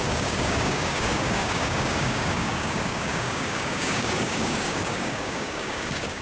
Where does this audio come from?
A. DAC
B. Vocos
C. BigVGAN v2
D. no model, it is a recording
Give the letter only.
A